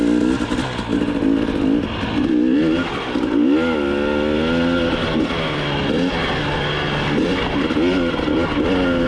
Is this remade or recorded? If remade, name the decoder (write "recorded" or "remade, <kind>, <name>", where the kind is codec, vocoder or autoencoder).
recorded